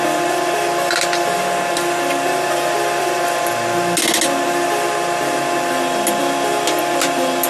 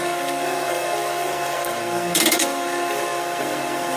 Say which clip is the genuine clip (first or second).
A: first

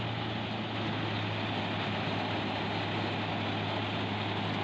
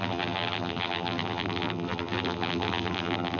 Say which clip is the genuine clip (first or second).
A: first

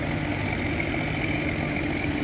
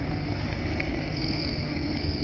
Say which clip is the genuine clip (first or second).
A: first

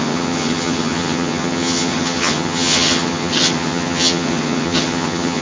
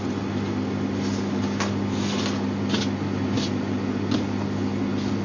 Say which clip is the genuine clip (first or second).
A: second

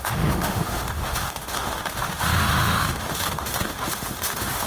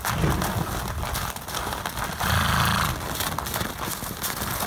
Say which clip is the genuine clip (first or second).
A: second